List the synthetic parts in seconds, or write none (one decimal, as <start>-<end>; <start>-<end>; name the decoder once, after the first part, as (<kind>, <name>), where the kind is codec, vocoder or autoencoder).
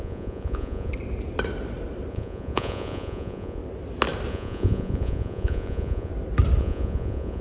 0.0-0.9 (vocoder, Vocos); 2.1-3.6; 4.3-6.1; 6.6-7.4